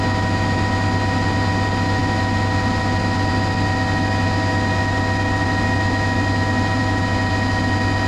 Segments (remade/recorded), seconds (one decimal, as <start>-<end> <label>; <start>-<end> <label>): 0.0-8.1 recorded